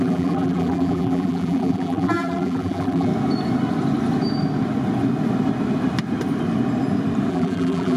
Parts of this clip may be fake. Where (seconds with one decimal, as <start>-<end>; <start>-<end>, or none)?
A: 0.0-3.1; 7.3-8.0